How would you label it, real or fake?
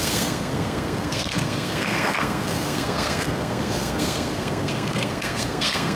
fake